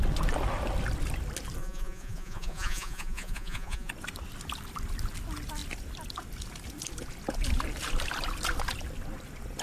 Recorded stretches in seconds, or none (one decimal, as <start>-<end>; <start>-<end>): 0.0-1.6; 3.9-9.6